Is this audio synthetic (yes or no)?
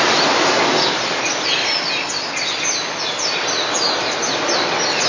no